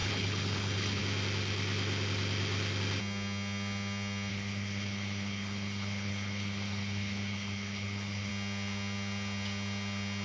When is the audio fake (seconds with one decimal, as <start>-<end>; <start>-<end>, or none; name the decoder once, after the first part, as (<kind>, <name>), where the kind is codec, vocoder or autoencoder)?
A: 0.0-1.0 (codec, HILCodec); 4.3-8.3